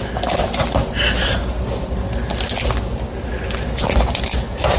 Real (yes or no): yes